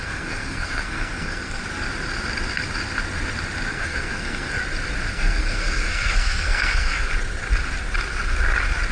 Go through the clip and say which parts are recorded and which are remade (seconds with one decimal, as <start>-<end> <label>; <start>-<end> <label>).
0.0-1.6 remade; 1.6-3.7 recorded; 3.7-4.6 remade; 4.6-5.1 recorded; 5.1-7.1 remade; 7.1-8.9 recorded